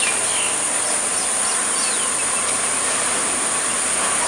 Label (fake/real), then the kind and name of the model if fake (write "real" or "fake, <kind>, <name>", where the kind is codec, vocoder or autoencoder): real